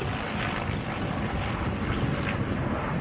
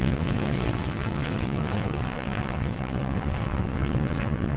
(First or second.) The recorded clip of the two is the first